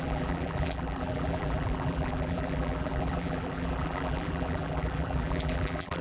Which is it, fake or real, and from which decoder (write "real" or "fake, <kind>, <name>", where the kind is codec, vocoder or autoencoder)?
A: fake, vocoder, BigVGAN v2